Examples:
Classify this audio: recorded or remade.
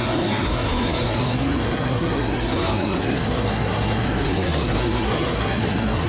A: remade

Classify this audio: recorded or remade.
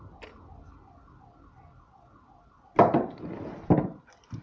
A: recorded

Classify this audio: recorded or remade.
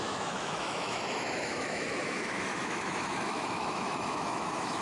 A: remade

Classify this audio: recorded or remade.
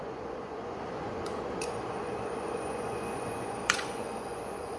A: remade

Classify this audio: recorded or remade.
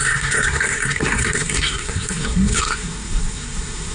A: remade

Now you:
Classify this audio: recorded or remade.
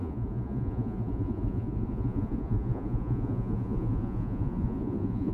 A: remade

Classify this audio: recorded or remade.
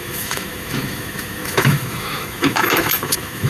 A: remade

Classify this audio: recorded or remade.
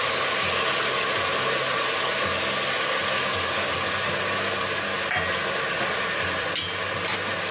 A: recorded